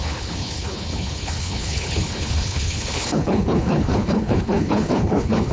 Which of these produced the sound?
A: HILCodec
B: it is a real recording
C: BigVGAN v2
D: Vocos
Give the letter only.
A